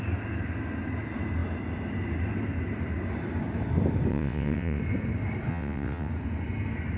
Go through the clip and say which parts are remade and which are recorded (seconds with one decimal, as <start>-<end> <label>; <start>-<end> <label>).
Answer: 0.0-4.1 recorded; 4.1-4.8 remade; 4.8-5.5 recorded; 5.5-6.1 remade; 6.1-7.0 recorded